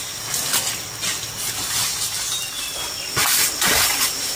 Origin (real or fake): real